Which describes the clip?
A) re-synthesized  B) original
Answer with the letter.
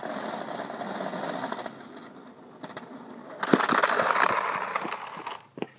B